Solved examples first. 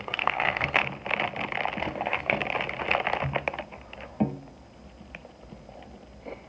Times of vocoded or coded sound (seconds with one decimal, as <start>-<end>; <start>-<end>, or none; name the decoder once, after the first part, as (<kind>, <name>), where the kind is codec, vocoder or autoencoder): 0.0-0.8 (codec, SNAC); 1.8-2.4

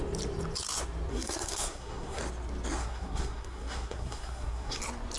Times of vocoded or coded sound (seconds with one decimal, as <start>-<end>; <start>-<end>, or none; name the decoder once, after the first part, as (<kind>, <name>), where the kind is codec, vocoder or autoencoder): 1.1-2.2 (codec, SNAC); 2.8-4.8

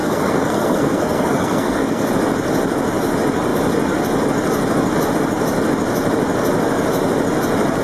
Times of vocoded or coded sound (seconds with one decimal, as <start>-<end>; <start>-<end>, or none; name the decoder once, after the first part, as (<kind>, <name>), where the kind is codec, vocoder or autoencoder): 0.0-2.1 (codec, SNAC)

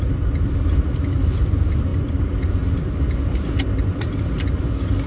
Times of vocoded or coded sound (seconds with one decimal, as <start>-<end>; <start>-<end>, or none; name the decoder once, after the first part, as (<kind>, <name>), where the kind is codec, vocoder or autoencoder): none